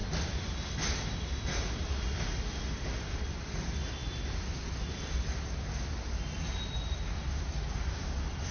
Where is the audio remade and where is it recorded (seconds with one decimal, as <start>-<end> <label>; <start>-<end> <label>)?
0.0-8.5 recorded